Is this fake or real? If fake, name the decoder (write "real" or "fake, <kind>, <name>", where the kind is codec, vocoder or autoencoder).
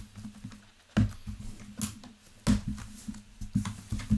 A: real